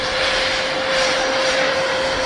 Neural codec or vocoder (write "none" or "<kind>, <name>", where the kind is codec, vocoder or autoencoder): vocoder, BigVGAN v2